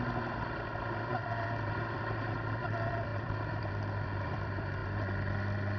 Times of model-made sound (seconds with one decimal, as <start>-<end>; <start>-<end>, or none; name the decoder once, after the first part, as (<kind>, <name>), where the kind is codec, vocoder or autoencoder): 0.0-4.8 (vocoder, BigVGAN v2)